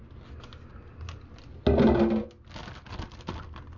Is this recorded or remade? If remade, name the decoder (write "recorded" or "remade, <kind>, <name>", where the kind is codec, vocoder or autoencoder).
recorded